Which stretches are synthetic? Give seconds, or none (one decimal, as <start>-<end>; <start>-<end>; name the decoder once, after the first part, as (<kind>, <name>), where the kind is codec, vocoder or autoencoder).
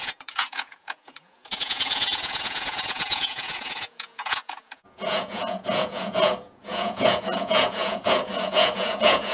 0.0-9.3 (vocoder, Vocos)